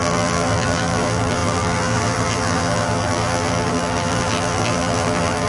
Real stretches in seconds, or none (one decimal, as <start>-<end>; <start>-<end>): none